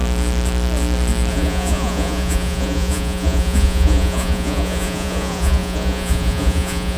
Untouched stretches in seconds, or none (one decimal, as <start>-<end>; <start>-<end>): 0.0-1.3